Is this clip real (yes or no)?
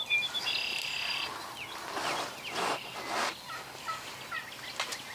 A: yes